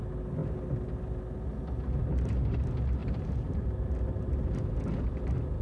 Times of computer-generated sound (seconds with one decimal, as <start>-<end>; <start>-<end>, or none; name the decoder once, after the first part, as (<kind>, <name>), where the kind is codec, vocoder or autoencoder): 3.0-4.5 (vocoder, BigVGAN v2)